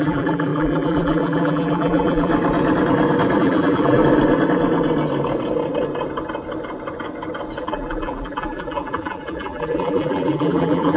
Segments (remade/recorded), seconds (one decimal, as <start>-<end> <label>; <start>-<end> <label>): 0.0-2.3 remade; 2.3-3.4 recorded; 3.4-4.0 remade; 4.0-7.6 recorded; 7.6-11.0 remade